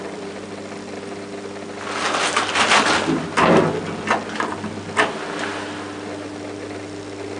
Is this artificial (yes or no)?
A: no